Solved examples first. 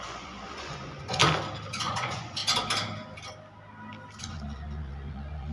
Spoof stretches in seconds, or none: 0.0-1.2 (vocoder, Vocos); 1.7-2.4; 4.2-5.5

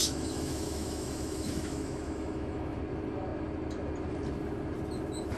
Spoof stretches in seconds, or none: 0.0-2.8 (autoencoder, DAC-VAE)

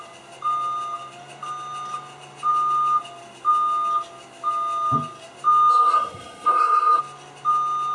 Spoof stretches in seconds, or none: 5.7-7.0 (codec, SNAC)

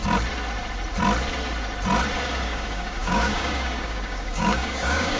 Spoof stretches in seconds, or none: 2.3-5.2 (codec, DAC)

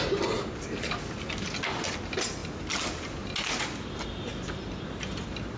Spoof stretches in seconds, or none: none